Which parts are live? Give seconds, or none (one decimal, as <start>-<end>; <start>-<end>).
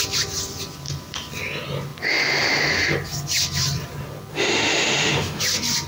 0.0-4.3; 5.4-5.9